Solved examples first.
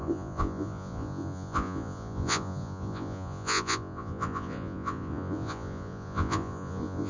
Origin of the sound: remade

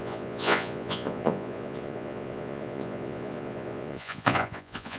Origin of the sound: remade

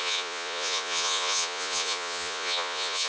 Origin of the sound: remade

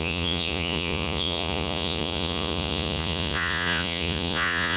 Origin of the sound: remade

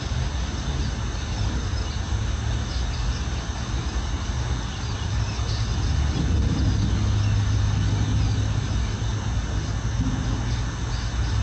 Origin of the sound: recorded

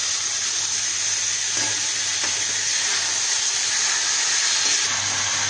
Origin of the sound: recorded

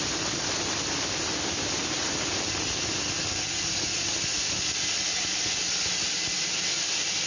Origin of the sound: recorded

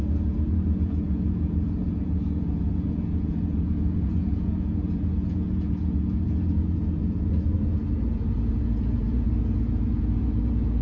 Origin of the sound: remade